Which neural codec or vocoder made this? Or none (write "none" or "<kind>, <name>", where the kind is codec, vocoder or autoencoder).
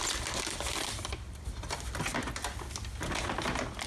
none